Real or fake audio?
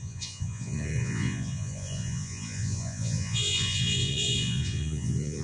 fake